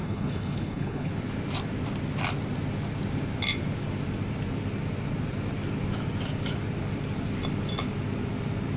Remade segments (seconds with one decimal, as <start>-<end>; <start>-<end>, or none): 0.0-1.1